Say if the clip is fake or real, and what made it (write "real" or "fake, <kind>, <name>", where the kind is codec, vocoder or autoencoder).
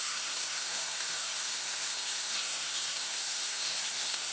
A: fake, codec, SNAC